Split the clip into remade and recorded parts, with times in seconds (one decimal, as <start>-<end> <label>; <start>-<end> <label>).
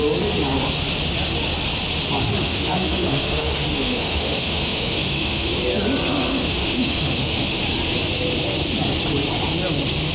0.0-2.4 recorded; 2.4-5.5 remade; 5.5-6.3 recorded; 6.3-7.6 remade; 7.6-10.1 recorded